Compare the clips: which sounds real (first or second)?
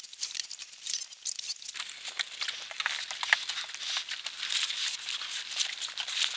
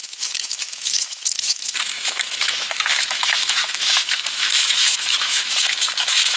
first